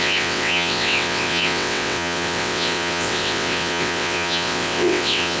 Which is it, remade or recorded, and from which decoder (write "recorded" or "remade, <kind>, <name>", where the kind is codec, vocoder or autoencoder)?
remade, vocoder, WaveNeXt